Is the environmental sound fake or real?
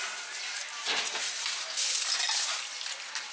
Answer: real